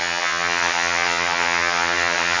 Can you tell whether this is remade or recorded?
remade